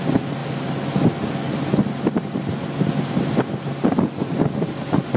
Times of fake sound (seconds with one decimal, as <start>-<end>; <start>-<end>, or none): none